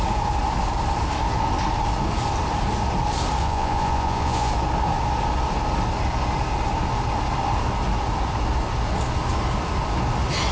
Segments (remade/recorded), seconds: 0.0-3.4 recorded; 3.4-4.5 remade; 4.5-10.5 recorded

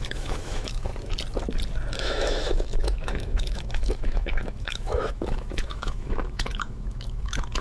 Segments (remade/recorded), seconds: 0.0-0.9 remade; 0.9-2.0 recorded; 2.0-7.6 remade